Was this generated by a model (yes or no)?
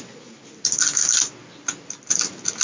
no